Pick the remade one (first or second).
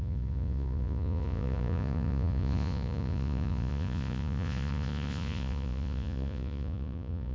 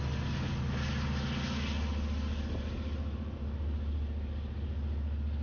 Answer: first